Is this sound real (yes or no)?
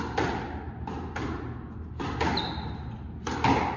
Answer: yes